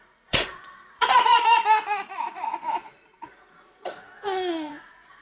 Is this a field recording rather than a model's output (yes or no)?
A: no